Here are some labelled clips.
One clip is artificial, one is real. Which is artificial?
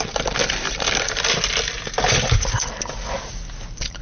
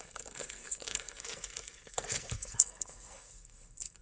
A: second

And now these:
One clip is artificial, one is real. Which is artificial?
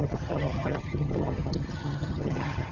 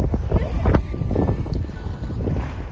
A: first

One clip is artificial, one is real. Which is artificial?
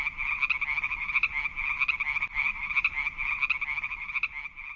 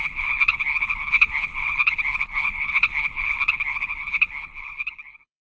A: second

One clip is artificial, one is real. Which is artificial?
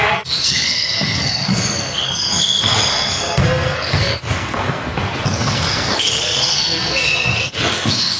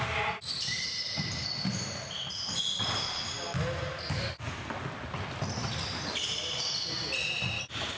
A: first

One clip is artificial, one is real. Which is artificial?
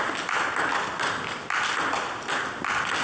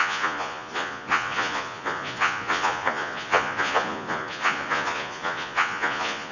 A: second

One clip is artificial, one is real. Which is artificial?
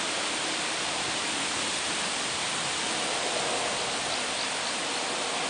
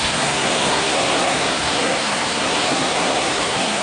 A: second